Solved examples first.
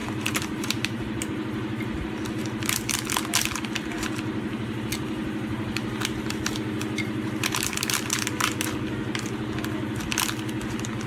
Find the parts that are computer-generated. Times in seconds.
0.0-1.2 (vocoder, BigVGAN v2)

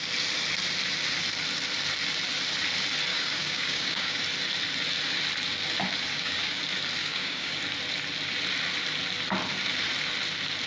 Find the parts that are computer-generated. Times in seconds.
3.1-4.2 (codec, DAC); 6.1-6.6; 7.0-7.6